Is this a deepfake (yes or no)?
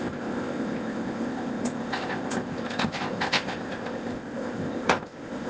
yes